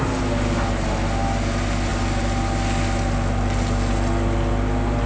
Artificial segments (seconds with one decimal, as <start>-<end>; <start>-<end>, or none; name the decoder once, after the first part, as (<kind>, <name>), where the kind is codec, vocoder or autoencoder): none